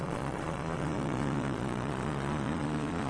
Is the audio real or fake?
fake